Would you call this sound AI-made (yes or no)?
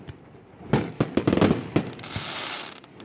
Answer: no